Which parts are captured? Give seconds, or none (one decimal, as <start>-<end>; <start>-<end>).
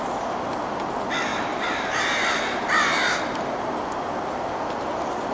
0.0-5.3